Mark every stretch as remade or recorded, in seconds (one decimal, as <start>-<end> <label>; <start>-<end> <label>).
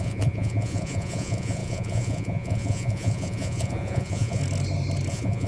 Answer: 0.0-4.4 remade; 4.4-5.1 recorded; 5.1-5.5 remade